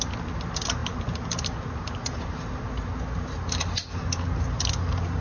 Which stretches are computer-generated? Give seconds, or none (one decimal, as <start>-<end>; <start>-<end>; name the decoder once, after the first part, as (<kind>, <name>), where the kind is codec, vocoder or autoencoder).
none